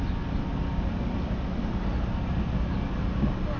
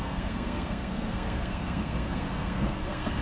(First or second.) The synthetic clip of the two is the second